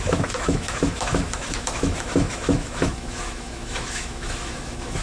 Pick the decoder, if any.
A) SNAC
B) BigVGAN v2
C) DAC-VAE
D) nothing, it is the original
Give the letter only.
C